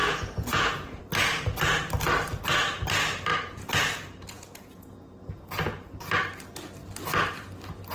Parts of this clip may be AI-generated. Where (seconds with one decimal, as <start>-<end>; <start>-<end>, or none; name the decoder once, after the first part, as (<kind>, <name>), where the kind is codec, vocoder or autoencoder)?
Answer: 0.0-1.0 (vocoder, Vocos); 3.3-5.4